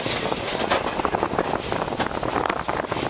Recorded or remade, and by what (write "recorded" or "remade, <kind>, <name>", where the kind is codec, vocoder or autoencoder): recorded